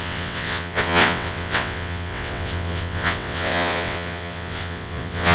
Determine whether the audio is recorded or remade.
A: remade